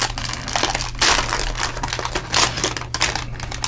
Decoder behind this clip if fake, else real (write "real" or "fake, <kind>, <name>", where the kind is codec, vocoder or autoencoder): real